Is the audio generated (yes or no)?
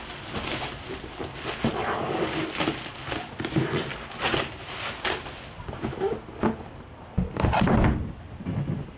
no